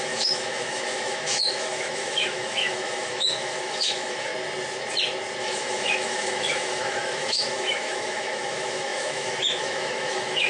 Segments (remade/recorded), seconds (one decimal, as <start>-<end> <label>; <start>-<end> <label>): 0.0-4.3 remade; 4.3-5.4 recorded; 5.4-10.5 remade